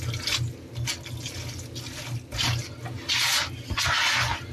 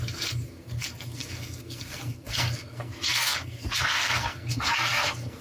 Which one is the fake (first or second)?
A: second